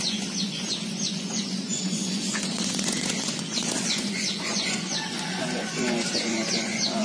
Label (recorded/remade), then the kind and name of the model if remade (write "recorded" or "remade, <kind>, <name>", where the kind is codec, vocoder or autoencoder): remade, vocoder, Vocos